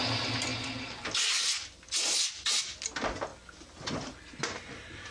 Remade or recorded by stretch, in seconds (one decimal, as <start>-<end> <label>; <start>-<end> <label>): 0.0-5.1 recorded